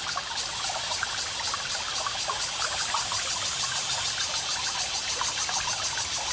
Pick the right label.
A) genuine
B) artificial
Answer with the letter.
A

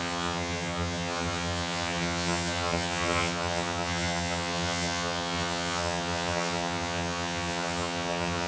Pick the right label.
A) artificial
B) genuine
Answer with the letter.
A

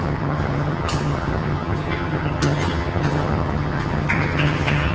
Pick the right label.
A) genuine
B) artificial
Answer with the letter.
B